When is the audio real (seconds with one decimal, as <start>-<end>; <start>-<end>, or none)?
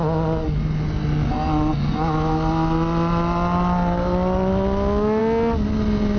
0.0-6.2